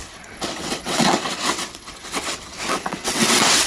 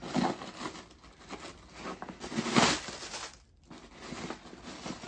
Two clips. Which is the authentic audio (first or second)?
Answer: second